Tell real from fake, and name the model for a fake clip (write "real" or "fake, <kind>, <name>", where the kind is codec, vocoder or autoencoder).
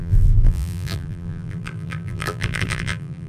fake, vocoder, BigVGAN v2